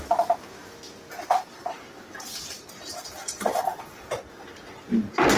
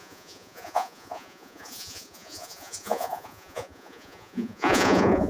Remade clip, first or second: second